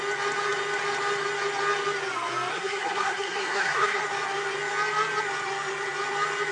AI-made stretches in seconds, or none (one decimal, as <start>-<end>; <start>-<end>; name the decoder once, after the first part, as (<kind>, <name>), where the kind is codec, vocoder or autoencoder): 2.5-4.0 (codec, SNAC)